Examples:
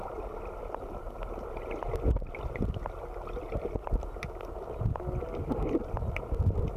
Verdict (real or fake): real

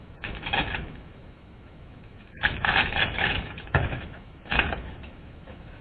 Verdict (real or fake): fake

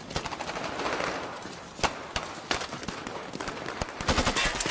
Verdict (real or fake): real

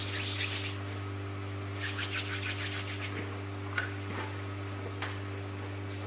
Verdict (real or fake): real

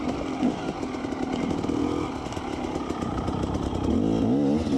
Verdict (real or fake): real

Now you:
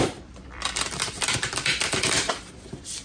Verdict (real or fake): fake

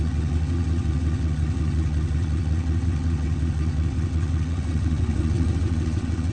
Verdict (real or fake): fake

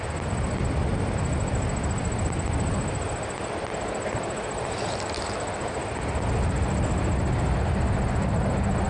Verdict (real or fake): real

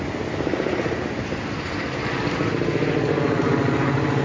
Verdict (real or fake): real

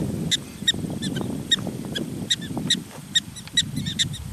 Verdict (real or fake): real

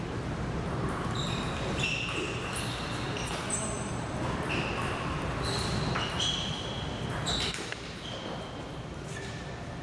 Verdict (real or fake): real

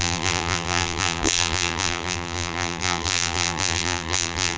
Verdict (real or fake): fake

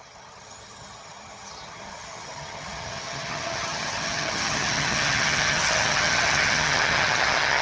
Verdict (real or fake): fake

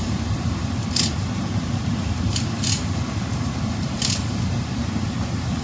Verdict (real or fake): fake